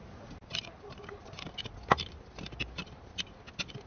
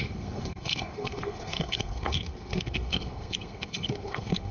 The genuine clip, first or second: first